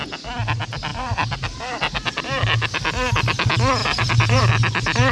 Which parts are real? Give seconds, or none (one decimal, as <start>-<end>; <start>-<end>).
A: 0.0-0.9; 2.4-3.8; 4.4-5.1